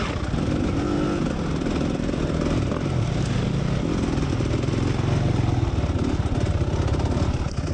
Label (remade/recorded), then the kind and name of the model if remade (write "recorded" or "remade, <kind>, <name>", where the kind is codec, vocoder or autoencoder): recorded